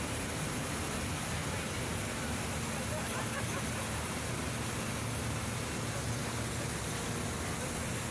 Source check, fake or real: real